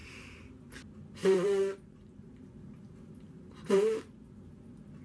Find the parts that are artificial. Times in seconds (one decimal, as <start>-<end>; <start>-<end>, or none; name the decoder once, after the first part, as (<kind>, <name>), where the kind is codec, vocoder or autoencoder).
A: 0.0-0.7 (vocoder, BigVGAN v2); 1.2-4.2